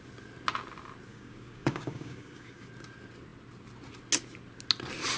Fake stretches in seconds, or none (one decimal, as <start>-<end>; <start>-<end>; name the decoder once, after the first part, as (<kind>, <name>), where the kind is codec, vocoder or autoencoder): 1.1-2.7 (codec, DAC)